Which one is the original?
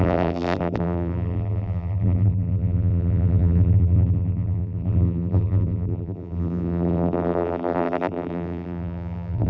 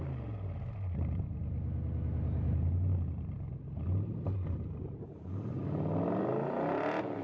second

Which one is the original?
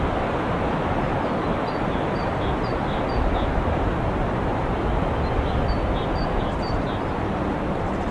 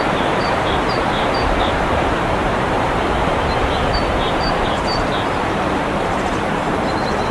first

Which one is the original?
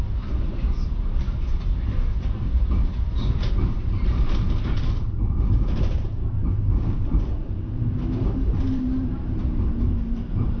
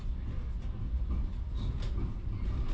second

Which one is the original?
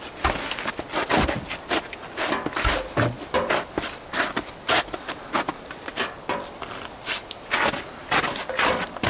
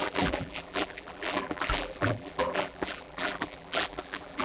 first